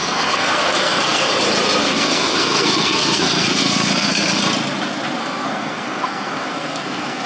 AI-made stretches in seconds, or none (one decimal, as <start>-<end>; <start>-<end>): 0.0-1.3; 1.8-4.4; 5.2-7.3